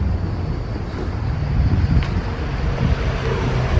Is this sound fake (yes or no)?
no